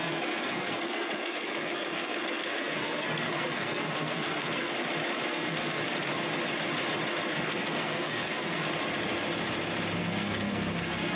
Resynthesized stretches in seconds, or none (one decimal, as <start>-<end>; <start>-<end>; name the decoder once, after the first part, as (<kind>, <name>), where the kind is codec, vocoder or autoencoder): 0.0-4.7 (codec, SNAC); 5.3-5.8; 7.3-8.6; 10.0-11.2